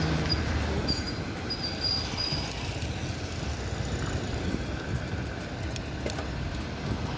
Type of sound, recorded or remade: recorded